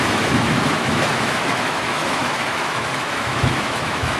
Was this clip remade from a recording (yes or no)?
yes